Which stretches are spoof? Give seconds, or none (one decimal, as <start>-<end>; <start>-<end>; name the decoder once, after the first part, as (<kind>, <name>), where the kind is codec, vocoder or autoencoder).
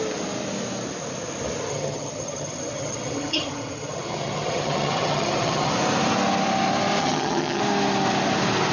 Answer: 1.7-5.7 (vocoder, HiFi-GAN); 7.0-7.6